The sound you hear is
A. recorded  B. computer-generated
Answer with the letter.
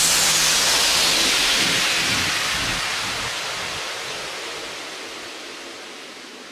A